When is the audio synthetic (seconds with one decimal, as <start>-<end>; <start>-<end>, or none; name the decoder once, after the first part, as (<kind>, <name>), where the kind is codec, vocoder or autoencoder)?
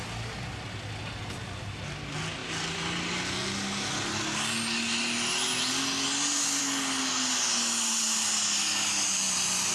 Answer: none